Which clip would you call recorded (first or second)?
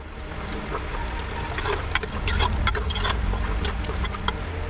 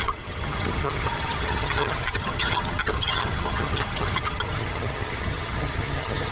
first